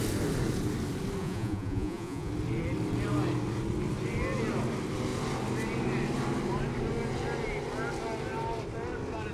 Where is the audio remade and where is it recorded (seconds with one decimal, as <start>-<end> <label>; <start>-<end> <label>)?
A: 0.0-1.2 recorded; 1.2-2.3 remade; 2.3-9.3 recorded